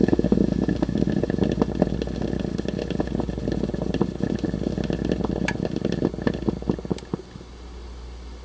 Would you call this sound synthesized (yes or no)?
no